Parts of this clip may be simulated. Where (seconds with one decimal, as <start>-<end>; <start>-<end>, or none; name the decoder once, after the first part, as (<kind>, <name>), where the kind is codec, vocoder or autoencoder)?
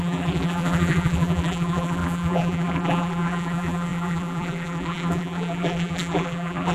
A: 0.0-6.7 (vocoder, BigVGAN v2)